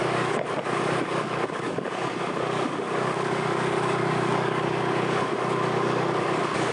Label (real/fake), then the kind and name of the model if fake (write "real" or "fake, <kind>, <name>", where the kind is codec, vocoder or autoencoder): fake, codec, DAC